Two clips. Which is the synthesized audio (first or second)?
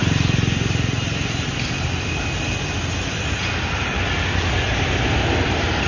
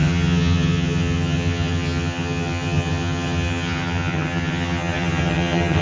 second